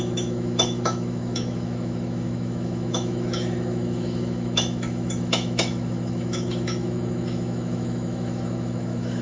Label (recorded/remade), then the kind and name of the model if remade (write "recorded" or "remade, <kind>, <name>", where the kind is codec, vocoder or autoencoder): remade, autoencoder, DAC-VAE